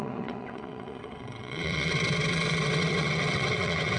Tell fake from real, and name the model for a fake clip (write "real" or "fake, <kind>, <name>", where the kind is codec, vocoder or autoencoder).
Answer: fake, vocoder, WaveNeXt